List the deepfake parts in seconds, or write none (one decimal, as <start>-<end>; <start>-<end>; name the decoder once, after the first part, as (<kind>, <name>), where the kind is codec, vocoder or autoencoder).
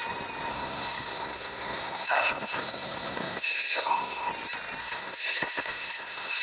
0.5-4.3 (codec, SNAC); 4.8-6.4